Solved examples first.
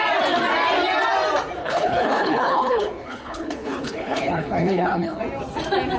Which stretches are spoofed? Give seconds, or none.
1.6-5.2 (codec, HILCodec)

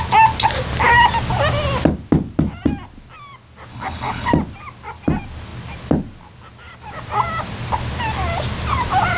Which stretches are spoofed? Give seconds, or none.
3.7-4.3 (codec, HILCodec)

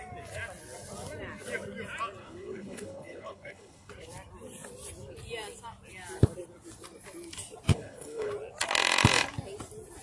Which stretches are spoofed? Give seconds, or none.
2.2-3.9 (codec, HILCodec); 7.7-8.3